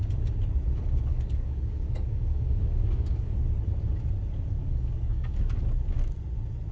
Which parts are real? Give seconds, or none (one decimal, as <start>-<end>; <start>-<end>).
0.0-1.1; 3.4-4.6; 5.6-6.7